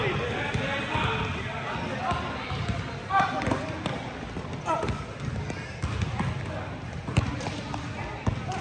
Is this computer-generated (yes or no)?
no